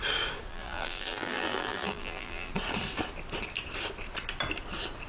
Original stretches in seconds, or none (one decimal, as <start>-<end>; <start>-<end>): 0.0-0.5; 2.5-5.1